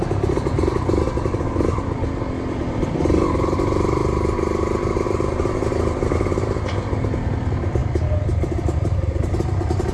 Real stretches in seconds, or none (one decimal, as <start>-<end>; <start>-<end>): 0.0-9.9